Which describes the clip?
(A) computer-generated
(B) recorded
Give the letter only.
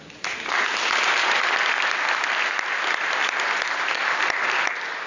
B